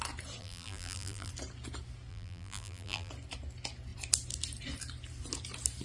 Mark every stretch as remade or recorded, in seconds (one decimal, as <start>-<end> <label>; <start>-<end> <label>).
0.0-0.4 recorded; 0.4-1.3 remade; 1.3-2.1 recorded; 2.1-3.1 remade; 3.1-5.8 recorded